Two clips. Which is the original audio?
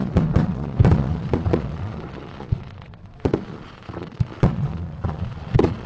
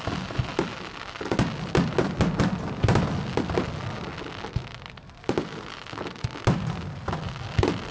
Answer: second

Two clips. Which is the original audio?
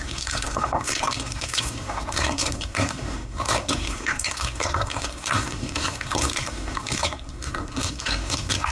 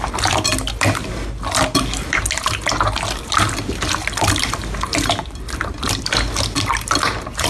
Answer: second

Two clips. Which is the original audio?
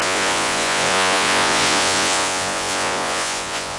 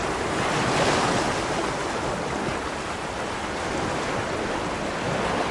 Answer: second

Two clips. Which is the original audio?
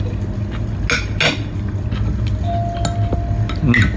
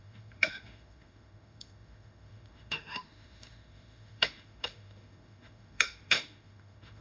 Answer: first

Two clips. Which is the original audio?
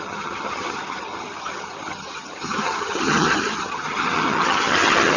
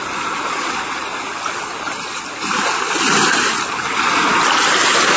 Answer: second